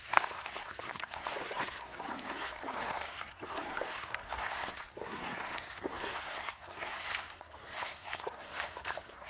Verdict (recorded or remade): remade